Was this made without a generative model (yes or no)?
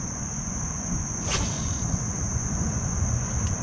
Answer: no